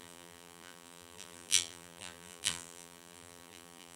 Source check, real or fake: fake